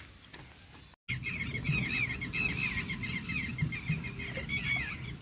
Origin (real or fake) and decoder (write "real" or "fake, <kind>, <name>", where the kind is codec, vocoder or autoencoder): real